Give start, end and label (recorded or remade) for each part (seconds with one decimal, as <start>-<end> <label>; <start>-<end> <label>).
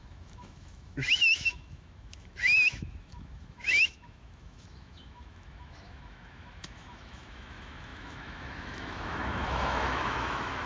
0.0-10.7 remade